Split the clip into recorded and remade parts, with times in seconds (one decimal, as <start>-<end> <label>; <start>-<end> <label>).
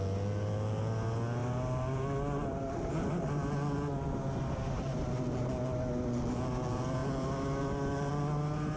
0.0-8.8 recorded